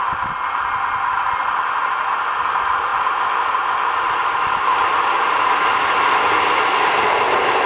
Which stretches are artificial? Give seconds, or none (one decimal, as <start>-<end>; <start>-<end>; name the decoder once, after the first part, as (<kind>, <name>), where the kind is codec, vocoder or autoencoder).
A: none